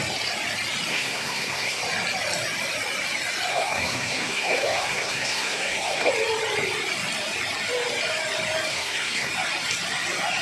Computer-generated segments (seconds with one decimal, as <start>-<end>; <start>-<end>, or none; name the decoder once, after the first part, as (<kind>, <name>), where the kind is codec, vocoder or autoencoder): 0.9-1.8 (codec, SNAC); 3.5-6.1; 8.7-9.3